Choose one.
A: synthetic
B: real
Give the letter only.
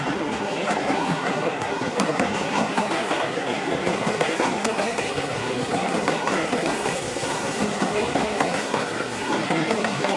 A